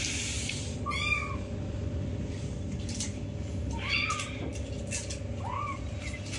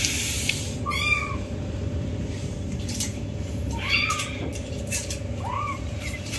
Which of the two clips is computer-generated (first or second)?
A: second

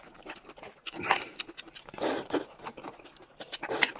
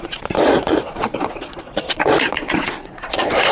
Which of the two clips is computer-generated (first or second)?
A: second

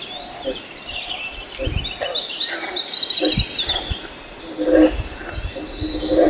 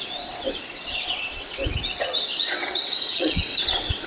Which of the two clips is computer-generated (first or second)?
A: second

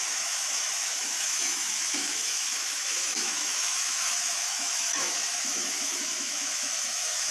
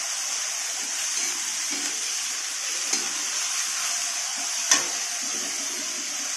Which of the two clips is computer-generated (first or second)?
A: first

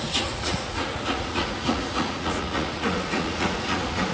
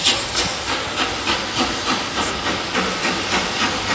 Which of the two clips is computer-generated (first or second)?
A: first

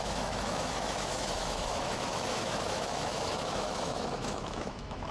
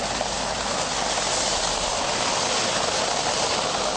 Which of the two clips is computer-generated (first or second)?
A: first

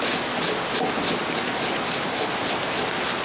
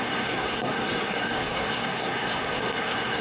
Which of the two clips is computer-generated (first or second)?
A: second